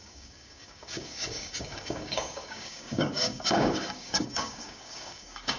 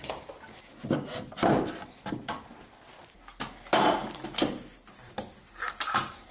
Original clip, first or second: second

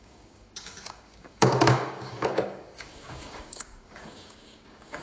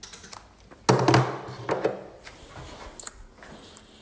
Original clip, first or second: second